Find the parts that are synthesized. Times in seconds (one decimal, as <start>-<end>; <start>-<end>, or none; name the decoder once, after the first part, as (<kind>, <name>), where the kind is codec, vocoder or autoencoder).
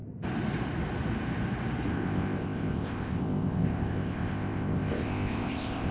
1.9-5.9 (codec, ZipCodec)